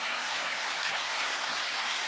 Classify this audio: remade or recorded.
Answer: remade